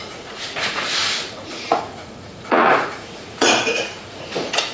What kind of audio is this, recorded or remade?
remade